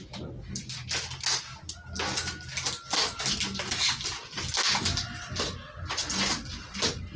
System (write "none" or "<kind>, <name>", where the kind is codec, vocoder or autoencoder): none